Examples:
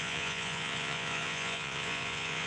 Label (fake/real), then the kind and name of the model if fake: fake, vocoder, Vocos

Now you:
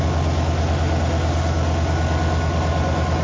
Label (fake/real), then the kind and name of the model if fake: real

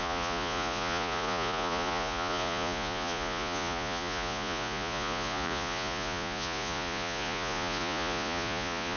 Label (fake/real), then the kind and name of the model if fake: fake, vocoder, Vocos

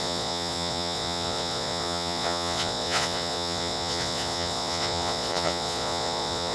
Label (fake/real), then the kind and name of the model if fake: fake, vocoder, Vocos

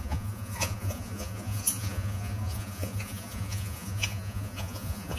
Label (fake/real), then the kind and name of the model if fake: fake, vocoder, Vocos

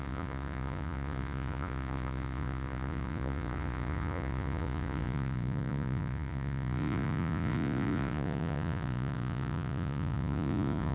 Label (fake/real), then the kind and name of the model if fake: fake, vocoder, Vocos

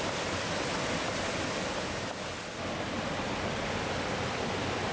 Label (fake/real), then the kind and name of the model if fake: real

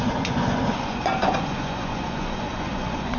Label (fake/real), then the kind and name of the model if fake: fake, vocoder, Vocos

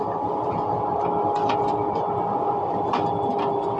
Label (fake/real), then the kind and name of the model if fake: real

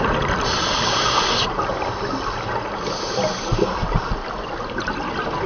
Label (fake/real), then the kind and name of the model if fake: real